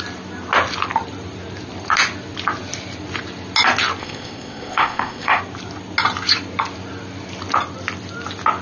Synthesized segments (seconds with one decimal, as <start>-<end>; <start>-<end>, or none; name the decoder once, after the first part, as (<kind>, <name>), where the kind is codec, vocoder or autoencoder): 4.0-5.4 (codec, ZipCodec)